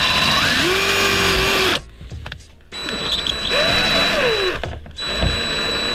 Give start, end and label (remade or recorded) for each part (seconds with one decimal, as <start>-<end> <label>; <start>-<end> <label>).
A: 0.0-5.9 recorded